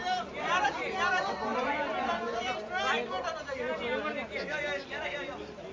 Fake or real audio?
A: real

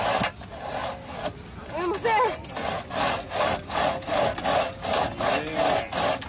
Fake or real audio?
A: real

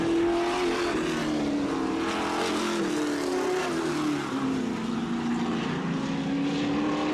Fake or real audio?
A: real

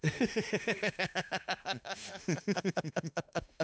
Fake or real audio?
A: fake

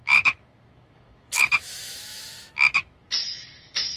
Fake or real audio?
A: fake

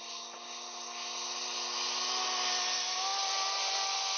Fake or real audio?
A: real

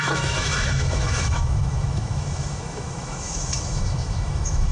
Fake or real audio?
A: fake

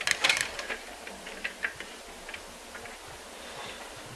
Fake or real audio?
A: real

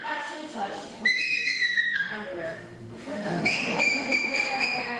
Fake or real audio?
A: fake